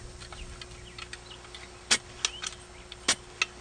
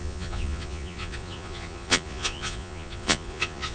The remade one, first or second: second